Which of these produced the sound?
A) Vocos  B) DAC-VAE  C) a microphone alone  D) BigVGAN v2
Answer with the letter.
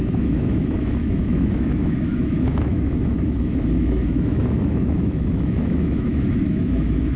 B